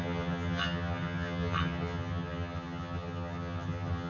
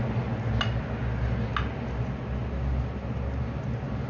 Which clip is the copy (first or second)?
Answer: first